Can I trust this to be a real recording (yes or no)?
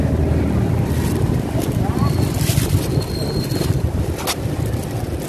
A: no